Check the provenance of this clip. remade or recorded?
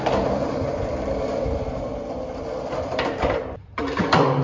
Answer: remade